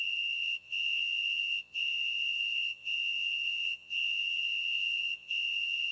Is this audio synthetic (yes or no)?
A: yes